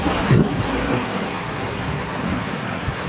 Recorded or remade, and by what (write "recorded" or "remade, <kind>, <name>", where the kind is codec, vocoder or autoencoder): remade, codec, SNAC